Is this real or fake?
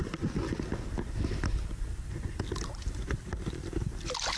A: real